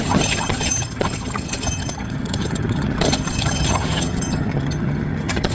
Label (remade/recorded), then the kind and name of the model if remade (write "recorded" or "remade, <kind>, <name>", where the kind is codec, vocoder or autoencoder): remade, vocoder, HiFi-GAN